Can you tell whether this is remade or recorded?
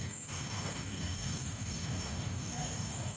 remade